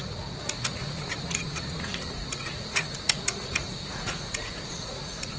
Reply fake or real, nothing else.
fake